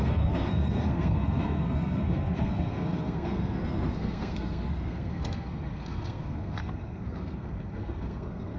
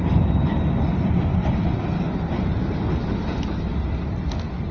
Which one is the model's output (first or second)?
first